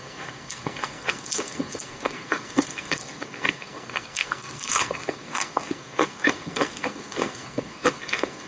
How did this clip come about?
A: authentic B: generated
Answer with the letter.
B